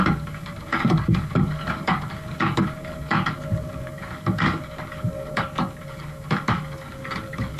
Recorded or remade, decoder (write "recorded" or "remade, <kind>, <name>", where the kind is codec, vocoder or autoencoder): remade, codec, DAC